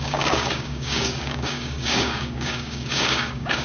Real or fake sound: fake